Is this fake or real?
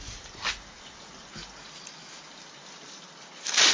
real